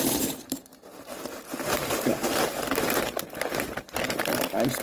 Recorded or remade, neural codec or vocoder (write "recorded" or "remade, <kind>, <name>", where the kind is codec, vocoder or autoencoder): remade, vocoder, BigVGAN v2